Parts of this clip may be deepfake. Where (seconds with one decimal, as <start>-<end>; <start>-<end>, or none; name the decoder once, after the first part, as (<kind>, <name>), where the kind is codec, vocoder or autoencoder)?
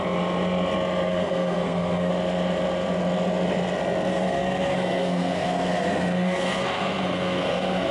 1.1-2.1 (codec, SNAC); 4.1-7.9